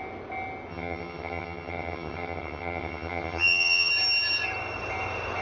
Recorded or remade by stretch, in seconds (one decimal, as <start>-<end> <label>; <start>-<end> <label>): 0.0-0.7 recorded; 0.7-3.9 remade; 3.9-5.4 recorded